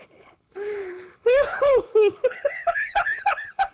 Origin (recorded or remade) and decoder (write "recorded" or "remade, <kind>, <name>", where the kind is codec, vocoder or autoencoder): remade, codec, HILCodec